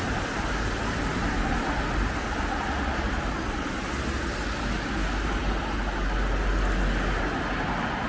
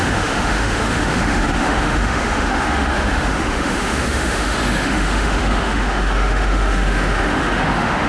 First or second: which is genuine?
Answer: first